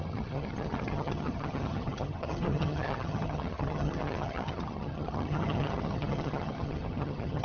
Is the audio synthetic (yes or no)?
yes